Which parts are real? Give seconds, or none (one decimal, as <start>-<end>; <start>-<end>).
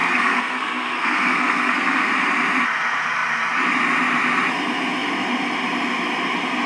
2.1-6.7